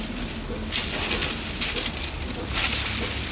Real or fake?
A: real